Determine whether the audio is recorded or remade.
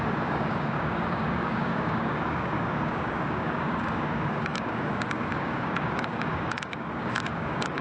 remade